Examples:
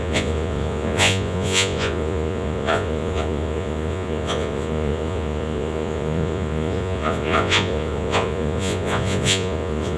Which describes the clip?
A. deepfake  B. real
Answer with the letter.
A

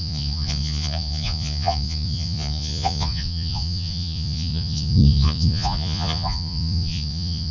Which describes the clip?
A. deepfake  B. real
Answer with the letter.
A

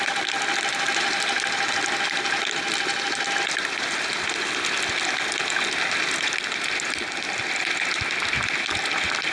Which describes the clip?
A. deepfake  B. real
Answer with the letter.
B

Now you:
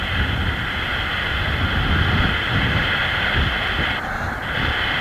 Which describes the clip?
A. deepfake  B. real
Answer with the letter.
B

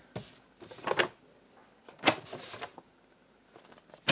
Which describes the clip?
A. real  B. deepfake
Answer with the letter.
A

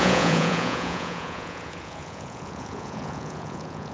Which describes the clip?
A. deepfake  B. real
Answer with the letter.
A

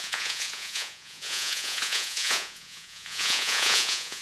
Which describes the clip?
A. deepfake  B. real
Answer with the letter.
A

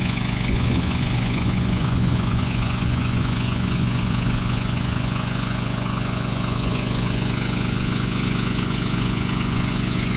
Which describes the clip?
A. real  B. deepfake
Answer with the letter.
B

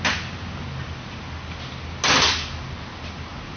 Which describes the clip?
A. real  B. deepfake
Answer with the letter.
A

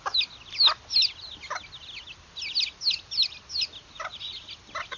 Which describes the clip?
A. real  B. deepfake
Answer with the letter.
A